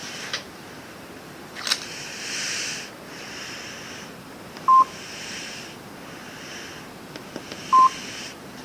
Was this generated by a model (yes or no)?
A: yes